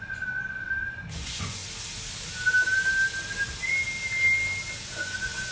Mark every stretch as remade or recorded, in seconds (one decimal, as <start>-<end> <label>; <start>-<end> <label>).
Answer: 0.0-1.6 remade; 1.6-4.9 recorded; 4.9-5.5 remade